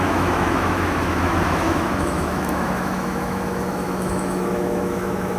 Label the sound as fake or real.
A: fake